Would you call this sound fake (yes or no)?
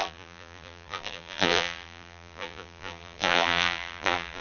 yes